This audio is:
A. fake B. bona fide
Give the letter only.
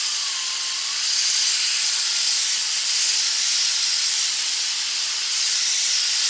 B